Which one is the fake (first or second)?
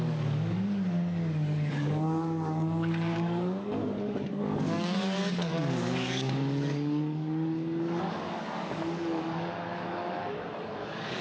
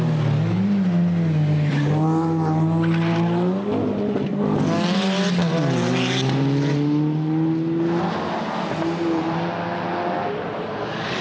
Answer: first